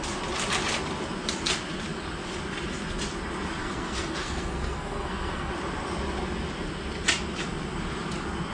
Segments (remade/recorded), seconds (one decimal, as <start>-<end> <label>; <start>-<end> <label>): 0.0-3.6 recorded; 3.6-5.5 remade; 5.5-8.5 recorded